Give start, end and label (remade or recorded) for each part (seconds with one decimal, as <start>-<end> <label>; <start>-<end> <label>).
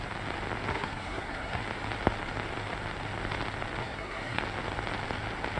0.0-0.7 recorded; 0.7-1.6 remade; 1.6-3.8 recorded; 3.8-4.4 remade; 4.4-5.6 recorded